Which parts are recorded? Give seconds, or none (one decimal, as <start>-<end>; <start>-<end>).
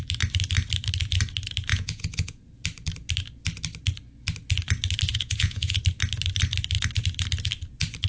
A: 0.0-1.7; 2.4-5.1; 5.8-8.1